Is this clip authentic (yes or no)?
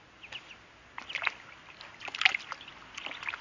yes